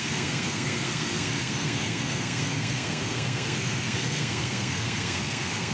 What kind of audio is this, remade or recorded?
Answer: remade